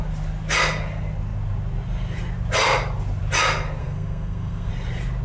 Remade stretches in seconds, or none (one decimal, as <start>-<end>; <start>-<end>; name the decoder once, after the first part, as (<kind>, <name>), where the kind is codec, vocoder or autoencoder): 3.8-4.7 (codec, SNAC)